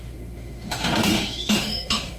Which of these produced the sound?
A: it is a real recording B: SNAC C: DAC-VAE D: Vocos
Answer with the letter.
C